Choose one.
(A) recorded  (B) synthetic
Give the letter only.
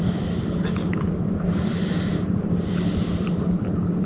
B